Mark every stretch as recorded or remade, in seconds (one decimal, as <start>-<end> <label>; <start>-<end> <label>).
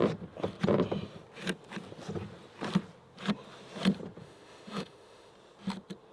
0.0-4.2 recorded; 4.2-5.3 remade; 5.3-6.1 recorded